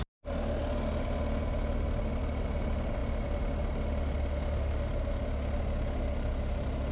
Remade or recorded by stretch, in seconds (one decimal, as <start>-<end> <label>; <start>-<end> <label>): 0.0-6.9 recorded